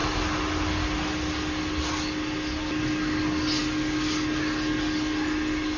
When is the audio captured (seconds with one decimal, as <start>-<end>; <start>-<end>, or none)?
0.0-5.8